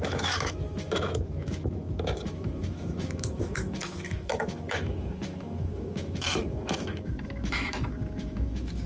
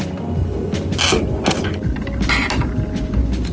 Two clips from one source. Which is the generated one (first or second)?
first